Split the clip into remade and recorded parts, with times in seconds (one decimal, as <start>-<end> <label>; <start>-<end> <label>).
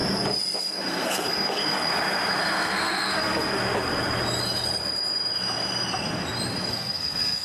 0.0-0.6 recorded; 0.6-1.9 remade; 1.9-2.4 recorded; 2.4-3.6 remade; 3.6-6.7 recorded; 6.7-7.4 remade